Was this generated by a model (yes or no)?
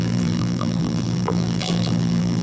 yes